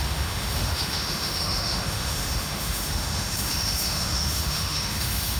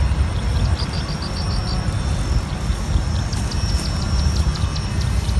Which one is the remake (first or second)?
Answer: first